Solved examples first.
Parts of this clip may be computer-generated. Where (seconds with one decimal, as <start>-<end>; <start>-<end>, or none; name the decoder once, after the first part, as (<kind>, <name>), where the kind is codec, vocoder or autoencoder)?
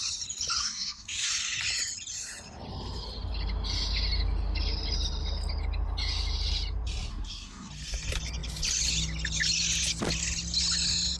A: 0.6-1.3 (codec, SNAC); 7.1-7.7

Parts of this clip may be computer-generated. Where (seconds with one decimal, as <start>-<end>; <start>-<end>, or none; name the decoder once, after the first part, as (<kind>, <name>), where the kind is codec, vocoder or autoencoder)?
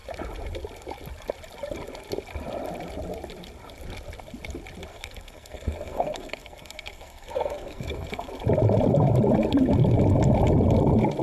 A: 4.9-8.3 (codec, SNAC)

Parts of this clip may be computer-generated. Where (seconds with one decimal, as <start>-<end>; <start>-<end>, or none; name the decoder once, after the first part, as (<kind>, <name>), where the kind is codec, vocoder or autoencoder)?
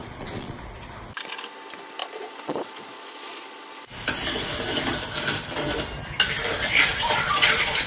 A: 0.0-0.6 (vocoder, Vocos); 2.0-3.6; 6.9-7.9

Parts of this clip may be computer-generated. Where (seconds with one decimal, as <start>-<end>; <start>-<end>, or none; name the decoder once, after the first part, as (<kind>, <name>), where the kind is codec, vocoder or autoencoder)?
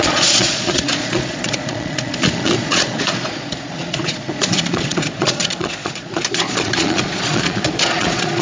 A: 0.0-8.4 (vocoder, Vocos)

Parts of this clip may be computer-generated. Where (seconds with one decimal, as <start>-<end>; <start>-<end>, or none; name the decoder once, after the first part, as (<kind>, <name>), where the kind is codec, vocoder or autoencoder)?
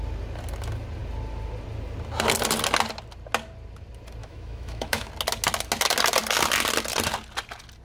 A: 4.2-5.1 (autoencoder, DAC-VAE)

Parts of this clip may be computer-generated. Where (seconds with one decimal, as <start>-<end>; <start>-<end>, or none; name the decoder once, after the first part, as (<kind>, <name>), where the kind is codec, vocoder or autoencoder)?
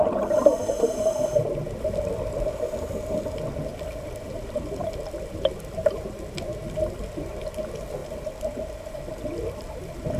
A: 3.7-5.3 (vocoder, BigVGAN v2); 8.0-9.0